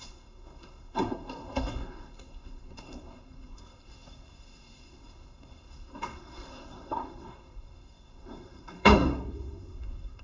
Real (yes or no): no